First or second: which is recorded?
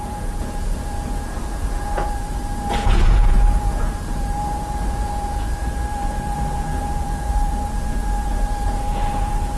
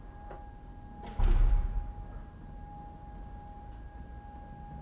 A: second